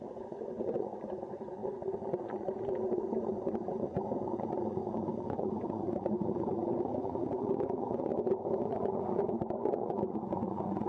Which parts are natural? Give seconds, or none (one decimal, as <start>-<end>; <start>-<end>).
8.1-8.6